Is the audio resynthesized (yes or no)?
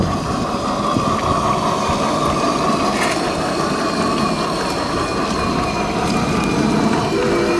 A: no